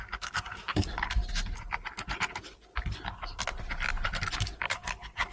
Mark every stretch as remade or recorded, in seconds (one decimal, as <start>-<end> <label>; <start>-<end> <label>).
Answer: 0.0-1.2 remade; 1.2-4.4 recorded; 4.4-5.3 remade